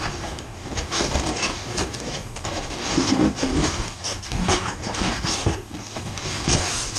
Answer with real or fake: fake